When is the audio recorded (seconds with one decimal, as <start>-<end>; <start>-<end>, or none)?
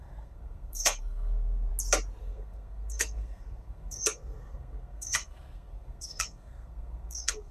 1.7-2.2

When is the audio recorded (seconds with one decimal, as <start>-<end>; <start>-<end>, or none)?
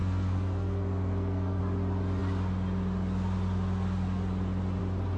1.6-5.2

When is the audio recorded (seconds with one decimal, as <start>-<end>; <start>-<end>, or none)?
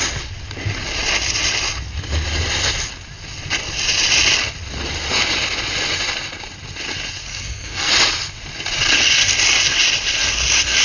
0.0-7.3; 7.9-10.8